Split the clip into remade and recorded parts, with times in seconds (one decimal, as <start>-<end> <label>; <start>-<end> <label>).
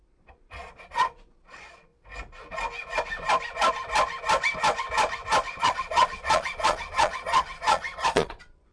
0.0-1.9 remade; 1.9-5.6 recorded; 5.6-8.7 remade